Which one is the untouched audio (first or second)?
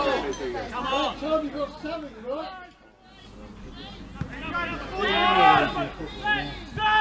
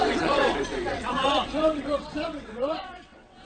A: first